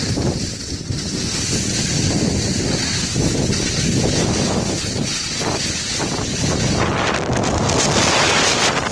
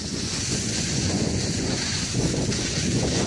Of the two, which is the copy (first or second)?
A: second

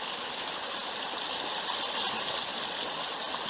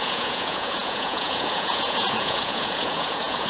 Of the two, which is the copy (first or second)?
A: second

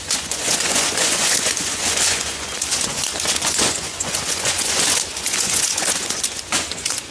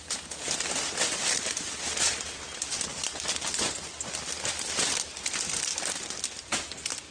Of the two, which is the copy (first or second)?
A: first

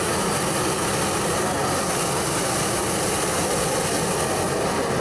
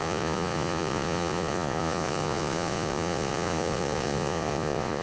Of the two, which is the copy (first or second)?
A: second